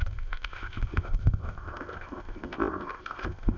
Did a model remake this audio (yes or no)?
yes